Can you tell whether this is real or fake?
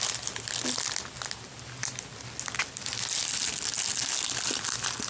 real